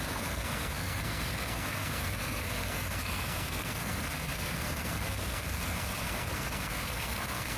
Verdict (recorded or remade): remade